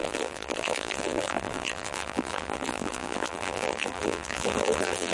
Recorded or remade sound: remade